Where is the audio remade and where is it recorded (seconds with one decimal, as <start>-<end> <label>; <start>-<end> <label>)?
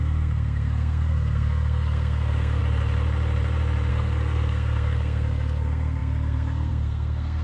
0.0-2.6 remade; 2.6-3.9 recorded; 3.9-7.4 remade